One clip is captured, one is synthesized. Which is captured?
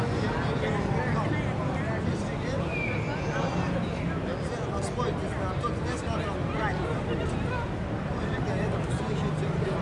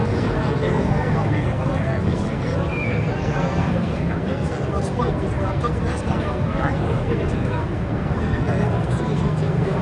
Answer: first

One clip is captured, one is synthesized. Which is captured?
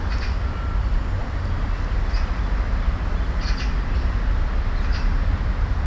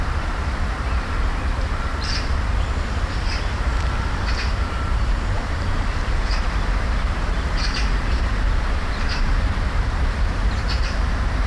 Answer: first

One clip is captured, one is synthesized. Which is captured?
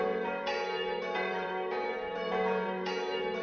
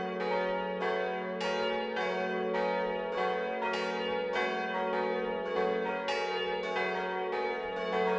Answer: second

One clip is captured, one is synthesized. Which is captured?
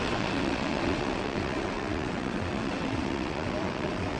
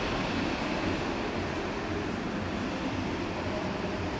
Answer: second